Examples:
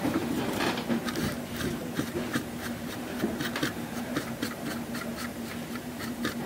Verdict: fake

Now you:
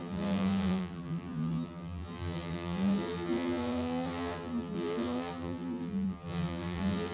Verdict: fake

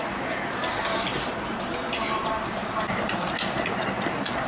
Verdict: fake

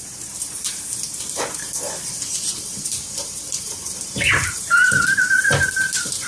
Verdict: fake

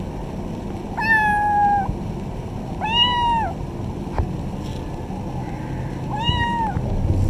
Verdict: real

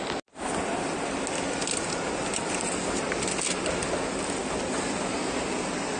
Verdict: real